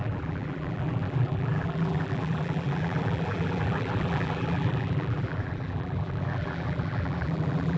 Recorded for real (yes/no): no